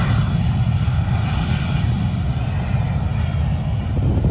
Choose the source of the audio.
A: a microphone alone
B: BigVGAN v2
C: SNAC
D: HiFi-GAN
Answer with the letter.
A